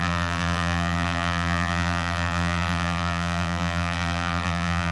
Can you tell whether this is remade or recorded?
remade